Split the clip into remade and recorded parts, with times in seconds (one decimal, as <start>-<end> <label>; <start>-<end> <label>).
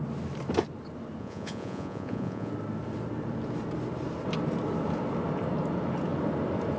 0.0-1.2 recorded; 1.2-2.5 remade; 2.5-6.8 recorded